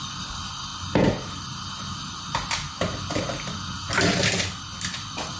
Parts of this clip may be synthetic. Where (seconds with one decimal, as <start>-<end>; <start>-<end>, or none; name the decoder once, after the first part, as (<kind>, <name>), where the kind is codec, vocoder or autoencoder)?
0.0-0.7 (vocoder, BigVGAN v2); 3.9-5.4